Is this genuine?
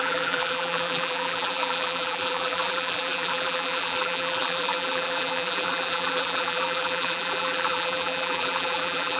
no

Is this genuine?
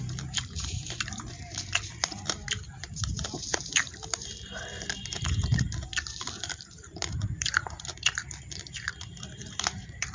no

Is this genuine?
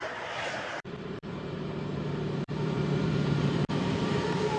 no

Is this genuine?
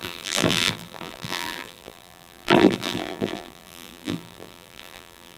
no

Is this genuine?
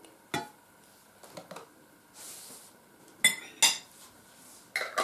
yes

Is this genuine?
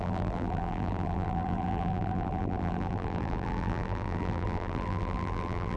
no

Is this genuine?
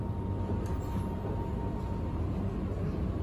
yes